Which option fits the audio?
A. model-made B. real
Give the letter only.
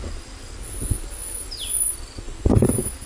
B